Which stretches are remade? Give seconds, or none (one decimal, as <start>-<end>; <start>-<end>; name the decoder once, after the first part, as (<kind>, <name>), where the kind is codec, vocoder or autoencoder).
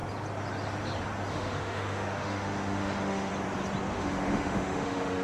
1.3-3.3 (autoencoder, DAC-VAE); 3.9-5.2